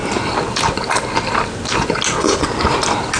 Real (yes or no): yes